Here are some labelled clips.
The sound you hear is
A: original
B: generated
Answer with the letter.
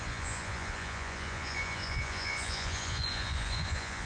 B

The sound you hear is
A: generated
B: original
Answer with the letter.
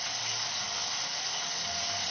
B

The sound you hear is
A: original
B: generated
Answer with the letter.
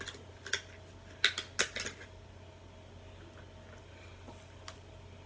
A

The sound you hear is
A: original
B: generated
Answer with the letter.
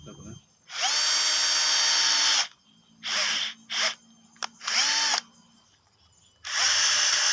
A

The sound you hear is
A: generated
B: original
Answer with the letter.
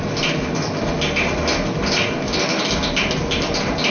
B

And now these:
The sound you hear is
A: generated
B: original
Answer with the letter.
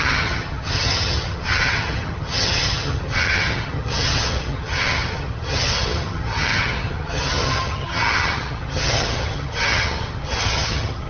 A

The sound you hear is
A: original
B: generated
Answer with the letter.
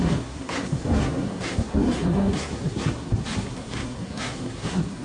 B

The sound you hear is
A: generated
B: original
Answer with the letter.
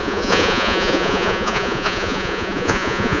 A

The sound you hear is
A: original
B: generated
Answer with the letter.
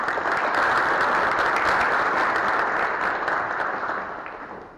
B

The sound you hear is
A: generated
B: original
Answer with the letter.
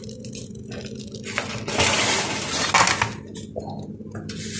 B